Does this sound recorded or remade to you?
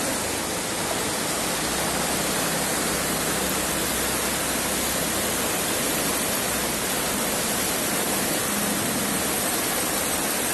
recorded